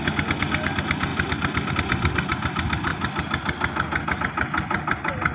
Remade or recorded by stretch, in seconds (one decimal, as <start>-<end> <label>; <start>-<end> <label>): 0.0-1.1 recorded; 1.1-1.7 remade; 1.7-2.9 recorded; 2.9-4.2 remade; 4.2-5.3 recorded